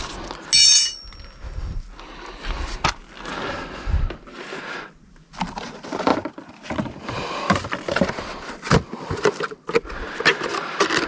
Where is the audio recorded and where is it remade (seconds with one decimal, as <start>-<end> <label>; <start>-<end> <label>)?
0.0-11.1 recorded